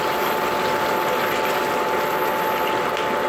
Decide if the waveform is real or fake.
real